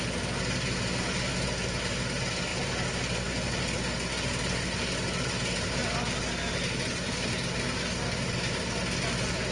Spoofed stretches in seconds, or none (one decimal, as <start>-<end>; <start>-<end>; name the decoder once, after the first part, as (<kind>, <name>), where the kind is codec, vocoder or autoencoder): none